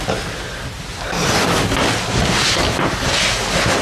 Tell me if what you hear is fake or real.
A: real